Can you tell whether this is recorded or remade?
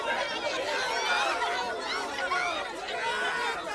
recorded